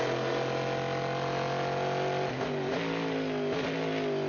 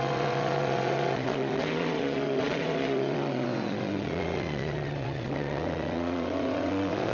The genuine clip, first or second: first